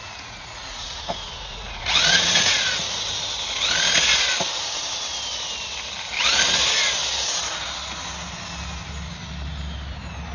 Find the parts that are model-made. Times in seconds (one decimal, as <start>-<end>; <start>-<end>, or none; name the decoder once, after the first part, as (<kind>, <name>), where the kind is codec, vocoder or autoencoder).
0.0-2.6 (vocoder, Vocos)